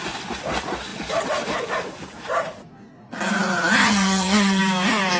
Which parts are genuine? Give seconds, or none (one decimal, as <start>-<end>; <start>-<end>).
0.0-3.8; 4.6-5.2